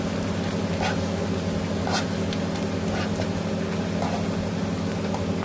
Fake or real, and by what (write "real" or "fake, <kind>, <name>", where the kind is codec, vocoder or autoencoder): real